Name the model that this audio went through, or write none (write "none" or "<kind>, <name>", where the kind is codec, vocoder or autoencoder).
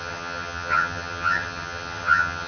vocoder, HiFi-GAN